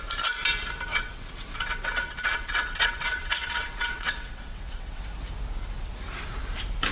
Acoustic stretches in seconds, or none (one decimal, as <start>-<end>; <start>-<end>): 0.0-0.9; 5.0-6.9